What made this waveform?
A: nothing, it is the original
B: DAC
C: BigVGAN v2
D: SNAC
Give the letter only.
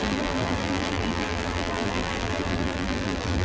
C